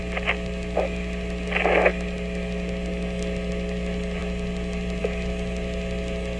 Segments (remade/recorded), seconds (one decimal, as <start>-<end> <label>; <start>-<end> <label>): 0.0-6.4 recorded